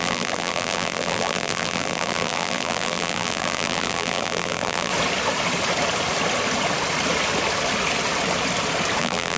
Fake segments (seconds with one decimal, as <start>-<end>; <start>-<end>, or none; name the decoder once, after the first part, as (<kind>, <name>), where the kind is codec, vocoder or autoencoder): 0.0-4.9 (vocoder, BigVGAN v2); 9.0-9.4